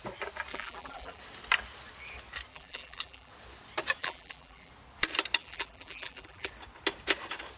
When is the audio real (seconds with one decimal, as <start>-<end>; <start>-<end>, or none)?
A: 0.0-0.5; 1.2-2.5; 3.3-4.0; 4.7-5.4; 6.5-7.6